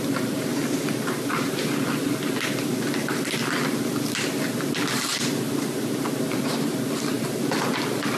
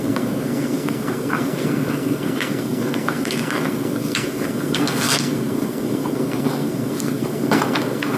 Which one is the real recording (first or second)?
first